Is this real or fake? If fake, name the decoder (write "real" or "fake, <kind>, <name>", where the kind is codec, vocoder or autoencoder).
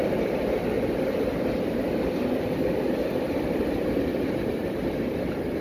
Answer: fake, vocoder, BigVGAN v2